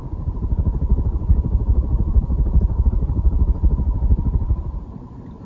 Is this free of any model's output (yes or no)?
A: no